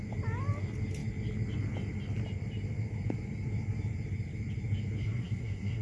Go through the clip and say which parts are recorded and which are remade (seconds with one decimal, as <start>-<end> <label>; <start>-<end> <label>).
0.0-5.0 recorded; 5.0-5.8 remade